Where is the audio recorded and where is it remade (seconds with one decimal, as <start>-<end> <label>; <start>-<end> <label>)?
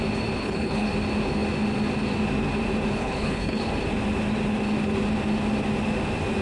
0.0-0.4 recorded; 0.4-0.9 remade; 0.9-3.0 recorded; 3.0-3.7 remade; 3.7-6.4 recorded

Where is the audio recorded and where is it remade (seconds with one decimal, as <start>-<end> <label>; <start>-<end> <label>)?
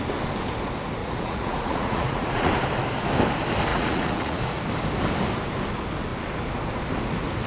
0.0-1.0 recorded; 1.0-2.5 remade; 2.5-3.7 recorded; 3.7-4.6 remade; 4.6-7.5 recorded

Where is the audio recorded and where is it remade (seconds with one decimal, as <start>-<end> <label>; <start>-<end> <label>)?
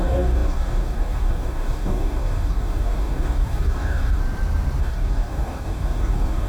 0.0-4.2 remade; 4.2-4.8 recorded; 4.8-6.5 remade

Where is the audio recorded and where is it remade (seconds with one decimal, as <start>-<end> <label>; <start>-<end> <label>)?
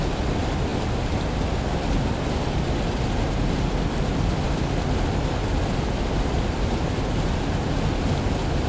0.0-8.7 recorded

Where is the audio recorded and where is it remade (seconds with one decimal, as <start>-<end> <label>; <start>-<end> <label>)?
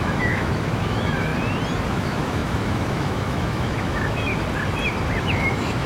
0.0-1.3 remade; 1.3-1.9 recorded; 1.9-4.3 remade; 4.3-5.2 recorded; 5.2-5.9 remade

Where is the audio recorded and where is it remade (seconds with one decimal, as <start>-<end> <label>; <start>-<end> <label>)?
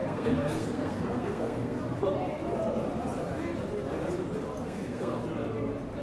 0.0-1.8 remade; 1.8-4.6 recorded; 4.6-5.2 remade; 5.2-6.0 recorded